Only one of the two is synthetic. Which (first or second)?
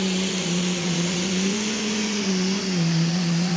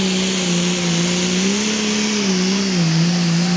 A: first